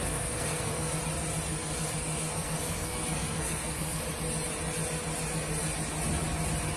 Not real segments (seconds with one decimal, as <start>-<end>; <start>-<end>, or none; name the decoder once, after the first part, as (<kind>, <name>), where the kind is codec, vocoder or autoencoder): 0.0-1.0 (codec, SNAC); 1.5-4.0